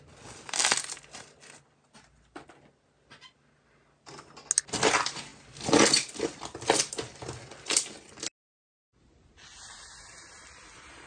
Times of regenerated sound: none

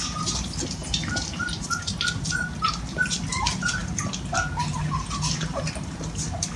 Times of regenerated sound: 0.8-1.6 (vocoder, BigVGAN v2)

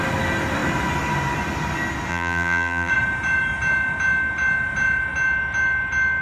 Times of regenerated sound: 2.1-2.9 (vocoder, BigVGAN v2)